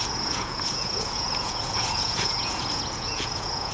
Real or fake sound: fake